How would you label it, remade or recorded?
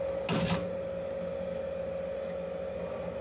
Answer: recorded